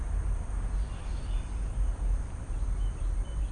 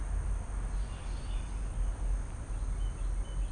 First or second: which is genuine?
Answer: second